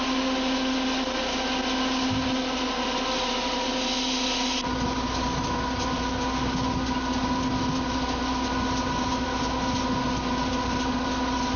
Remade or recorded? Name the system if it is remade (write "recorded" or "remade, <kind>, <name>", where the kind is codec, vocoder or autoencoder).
recorded